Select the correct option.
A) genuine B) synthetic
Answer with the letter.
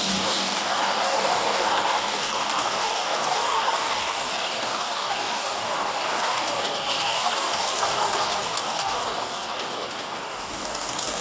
B